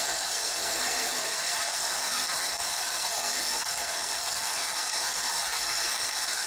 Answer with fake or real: fake